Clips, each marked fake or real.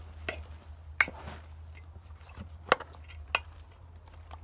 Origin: real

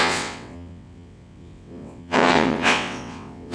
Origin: fake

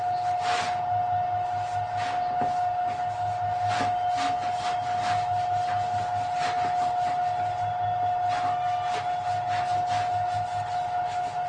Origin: real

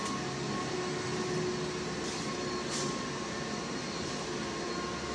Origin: real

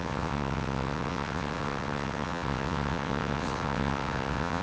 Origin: fake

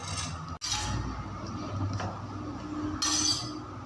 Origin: real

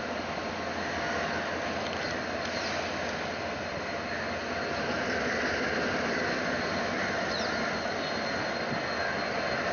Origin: real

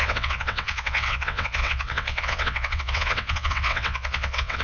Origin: fake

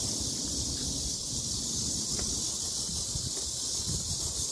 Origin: real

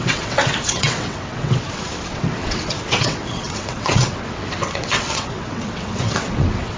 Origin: fake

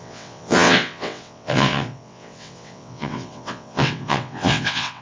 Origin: fake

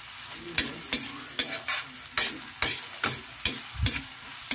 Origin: real